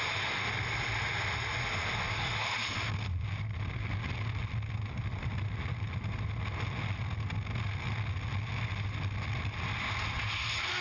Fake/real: real